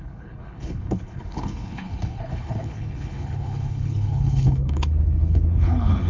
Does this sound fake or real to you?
fake